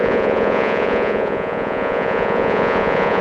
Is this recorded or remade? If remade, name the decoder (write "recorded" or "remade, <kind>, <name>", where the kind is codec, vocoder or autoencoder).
remade, vocoder, Vocos